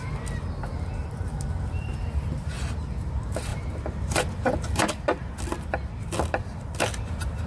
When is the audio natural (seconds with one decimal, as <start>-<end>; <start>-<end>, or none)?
0.0-7.5